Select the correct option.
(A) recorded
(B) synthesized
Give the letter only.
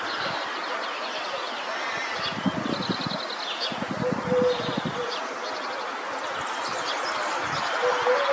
A